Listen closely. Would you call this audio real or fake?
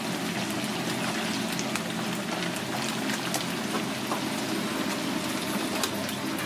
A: real